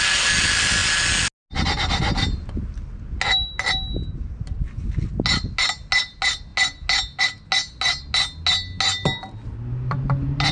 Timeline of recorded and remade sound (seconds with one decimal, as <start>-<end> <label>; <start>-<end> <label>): 0.0-10.5 recorded